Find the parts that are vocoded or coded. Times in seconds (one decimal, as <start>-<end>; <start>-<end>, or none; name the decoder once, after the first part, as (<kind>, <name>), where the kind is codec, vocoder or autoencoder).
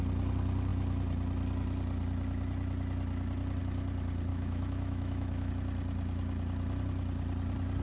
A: 4.3-5.5 (autoencoder, DAC-VAE)